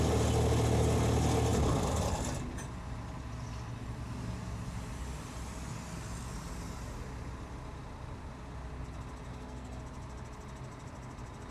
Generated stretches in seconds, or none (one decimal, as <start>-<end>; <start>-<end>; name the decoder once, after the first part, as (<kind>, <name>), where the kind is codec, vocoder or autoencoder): 9.3-9.8 (codec, SNAC)